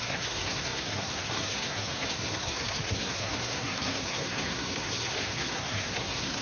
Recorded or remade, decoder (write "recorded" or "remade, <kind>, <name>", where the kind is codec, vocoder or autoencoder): remade, codec, SNAC